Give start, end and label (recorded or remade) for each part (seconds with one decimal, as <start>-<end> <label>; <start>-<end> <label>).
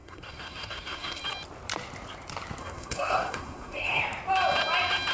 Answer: 0.0-1.2 remade; 1.2-2.6 recorded; 2.6-4.0 remade; 4.0-5.1 recorded